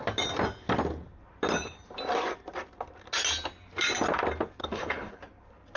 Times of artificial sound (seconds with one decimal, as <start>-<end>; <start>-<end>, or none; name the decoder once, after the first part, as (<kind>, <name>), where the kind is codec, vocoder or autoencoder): 4.6-5.2 (codec, HILCodec)

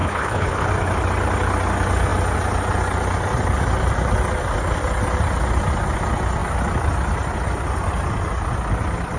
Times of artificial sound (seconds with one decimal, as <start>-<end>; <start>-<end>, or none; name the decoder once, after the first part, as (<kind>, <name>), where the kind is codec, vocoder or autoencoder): 0.0-0.7 (codec, HILCodec)